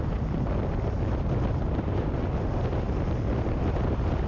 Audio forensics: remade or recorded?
recorded